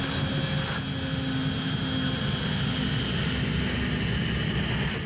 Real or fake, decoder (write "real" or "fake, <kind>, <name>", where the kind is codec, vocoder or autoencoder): real